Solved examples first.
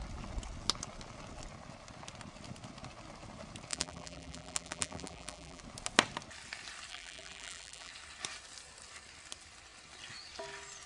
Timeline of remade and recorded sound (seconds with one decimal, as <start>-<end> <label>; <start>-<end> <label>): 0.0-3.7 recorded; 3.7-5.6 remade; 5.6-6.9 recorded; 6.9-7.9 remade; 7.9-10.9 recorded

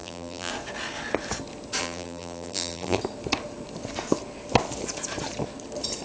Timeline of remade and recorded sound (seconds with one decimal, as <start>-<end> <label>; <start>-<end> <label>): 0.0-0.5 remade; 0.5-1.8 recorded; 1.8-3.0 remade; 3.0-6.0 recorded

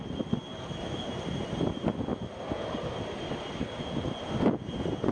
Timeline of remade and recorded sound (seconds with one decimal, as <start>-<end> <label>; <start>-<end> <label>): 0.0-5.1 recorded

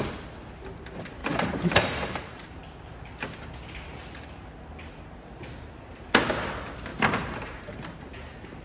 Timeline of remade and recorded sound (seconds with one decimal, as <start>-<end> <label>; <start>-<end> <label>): 0.0-1.2 recorded; 1.2-2.6 remade; 2.6-6.9 recorded; 6.9-8.0 remade; 8.0-8.6 recorded

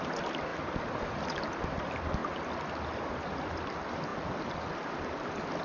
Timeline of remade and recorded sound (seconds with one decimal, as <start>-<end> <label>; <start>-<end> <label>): 0.0-0.5 remade; 0.5-1.0 recorded; 1.0-2.2 remade; 2.2-3.4 recorded; 3.4-4.1 remade; 4.1-5.6 recorded

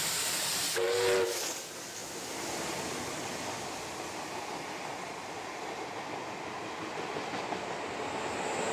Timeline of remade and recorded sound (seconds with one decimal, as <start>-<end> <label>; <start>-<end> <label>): 0.0-8.7 recorded